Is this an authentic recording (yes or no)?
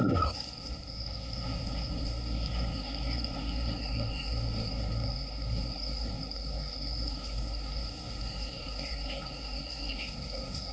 no